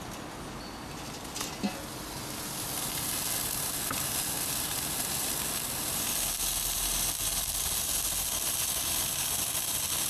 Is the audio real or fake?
real